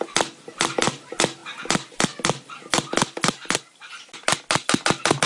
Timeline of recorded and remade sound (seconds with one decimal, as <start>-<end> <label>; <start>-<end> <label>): 0.0-5.3 recorded